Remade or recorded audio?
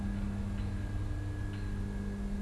recorded